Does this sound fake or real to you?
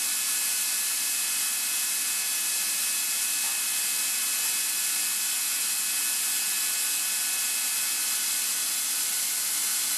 real